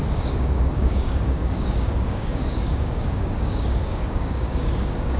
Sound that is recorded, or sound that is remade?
remade